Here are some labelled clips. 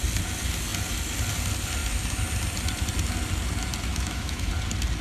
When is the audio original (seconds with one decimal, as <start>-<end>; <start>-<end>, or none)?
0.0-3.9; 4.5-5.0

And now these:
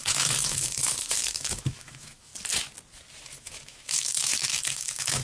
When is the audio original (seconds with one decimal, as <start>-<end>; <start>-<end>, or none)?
2.3-3.4

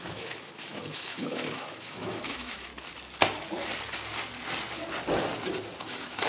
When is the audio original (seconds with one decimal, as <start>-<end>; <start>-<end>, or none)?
2.7-5.8

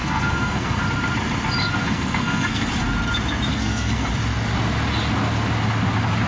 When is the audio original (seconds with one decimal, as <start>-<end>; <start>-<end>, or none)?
0.8-1.6; 2.7-3.5; 4.1-6.3

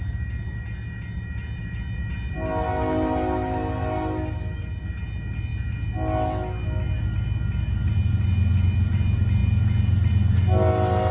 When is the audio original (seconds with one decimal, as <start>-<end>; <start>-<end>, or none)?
0.0-11.1